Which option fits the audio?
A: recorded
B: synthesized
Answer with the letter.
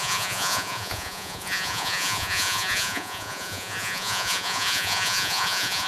B